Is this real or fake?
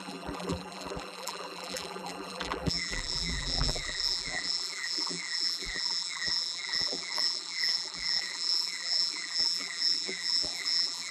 fake